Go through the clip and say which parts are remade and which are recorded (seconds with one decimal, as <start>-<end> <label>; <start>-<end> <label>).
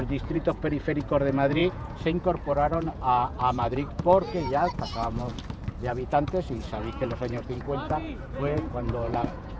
0.0-5.3 remade; 5.3-5.9 recorded; 5.9-9.6 remade